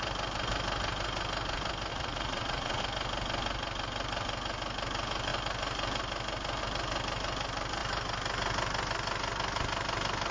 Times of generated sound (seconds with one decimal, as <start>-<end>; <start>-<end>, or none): 1.9-2.8